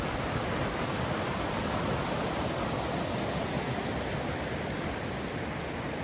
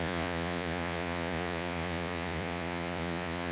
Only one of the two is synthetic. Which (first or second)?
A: second